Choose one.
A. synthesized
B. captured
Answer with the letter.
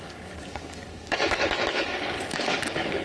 A